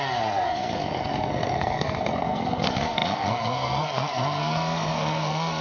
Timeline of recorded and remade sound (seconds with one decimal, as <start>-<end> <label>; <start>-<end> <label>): 0.0-5.6 remade